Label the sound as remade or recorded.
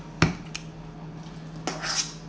recorded